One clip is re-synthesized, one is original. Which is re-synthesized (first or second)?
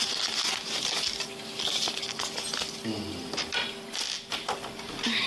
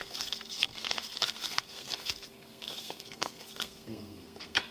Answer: second